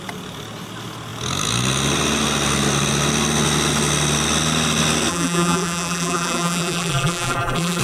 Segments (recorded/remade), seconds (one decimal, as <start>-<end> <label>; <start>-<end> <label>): 0.0-5.1 recorded; 5.1-7.8 remade

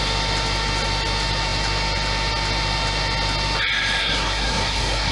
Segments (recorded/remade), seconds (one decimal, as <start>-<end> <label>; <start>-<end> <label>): 0.0-4.0 recorded; 4.0-5.1 remade

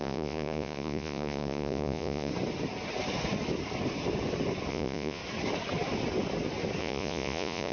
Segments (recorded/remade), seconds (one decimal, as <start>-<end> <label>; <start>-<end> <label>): 0.0-2.3 remade; 2.3-4.7 recorded; 4.7-5.2 remade; 5.2-6.8 recorded; 6.8-7.7 remade

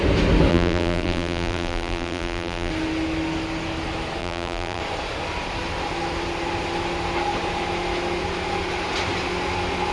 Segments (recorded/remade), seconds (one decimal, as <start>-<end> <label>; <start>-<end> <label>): 0.0-0.5 recorded; 0.5-2.7 remade; 2.7-4.2 recorded; 4.2-4.8 remade; 4.8-9.9 recorded

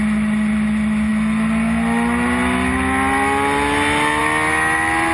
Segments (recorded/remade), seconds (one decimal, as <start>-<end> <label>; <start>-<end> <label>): 0.0-5.1 recorded

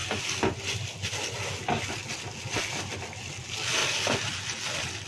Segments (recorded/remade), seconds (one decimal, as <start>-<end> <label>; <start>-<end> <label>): 0.0-5.1 recorded

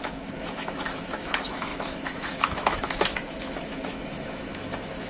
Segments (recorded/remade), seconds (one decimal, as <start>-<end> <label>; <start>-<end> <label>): 0.0-5.1 remade